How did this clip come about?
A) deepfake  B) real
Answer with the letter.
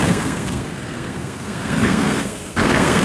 A